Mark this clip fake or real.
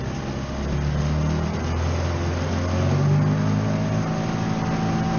real